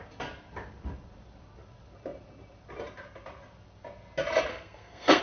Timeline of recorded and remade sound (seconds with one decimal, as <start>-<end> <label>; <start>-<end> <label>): 0.0-4.5 recorded; 4.5-5.2 remade